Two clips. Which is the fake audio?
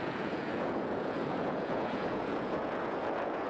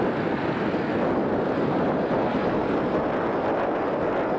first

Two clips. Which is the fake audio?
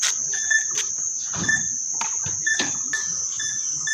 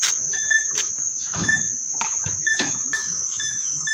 second